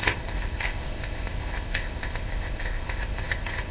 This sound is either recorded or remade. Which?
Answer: remade